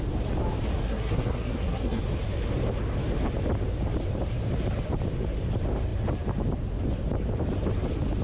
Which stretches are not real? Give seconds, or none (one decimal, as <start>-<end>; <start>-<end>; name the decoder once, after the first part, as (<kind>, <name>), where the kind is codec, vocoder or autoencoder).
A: 0.7-2.0 (codec, SNAC)